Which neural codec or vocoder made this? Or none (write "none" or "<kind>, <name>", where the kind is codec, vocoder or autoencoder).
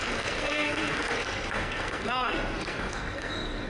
codec, SNAC